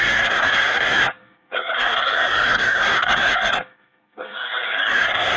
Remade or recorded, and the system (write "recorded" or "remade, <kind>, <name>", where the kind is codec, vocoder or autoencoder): remade, codec, SNAC